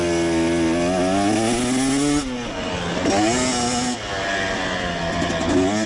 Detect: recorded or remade recorded